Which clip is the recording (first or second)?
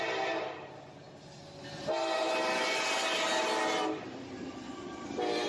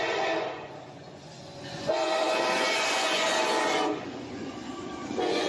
first